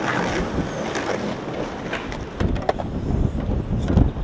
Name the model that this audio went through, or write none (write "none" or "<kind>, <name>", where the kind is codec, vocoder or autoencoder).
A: none